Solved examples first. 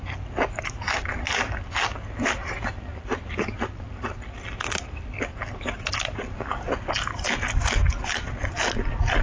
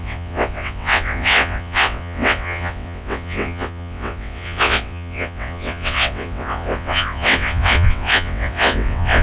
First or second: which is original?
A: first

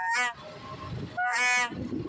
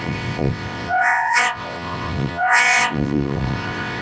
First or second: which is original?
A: first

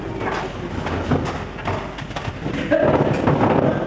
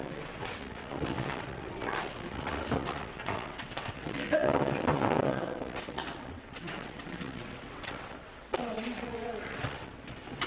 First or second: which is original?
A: first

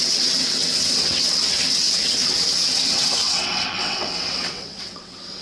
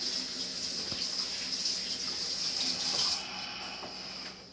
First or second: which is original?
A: second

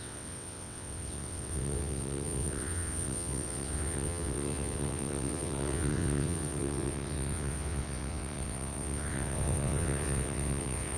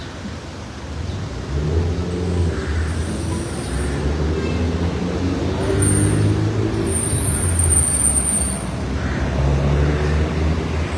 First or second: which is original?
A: second